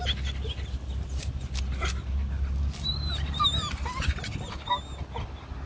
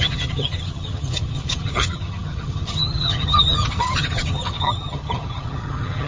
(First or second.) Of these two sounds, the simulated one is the second